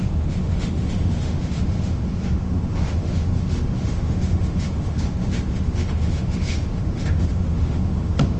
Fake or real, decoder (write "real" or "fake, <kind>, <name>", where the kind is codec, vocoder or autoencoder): fake, autoencoder, DAC-VAE